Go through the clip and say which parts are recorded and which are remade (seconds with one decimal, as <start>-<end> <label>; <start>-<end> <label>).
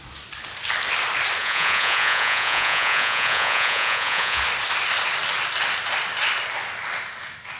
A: 0.0-1.4 recorded; 1.4-4.4 remade; 4.4-7.6 recorded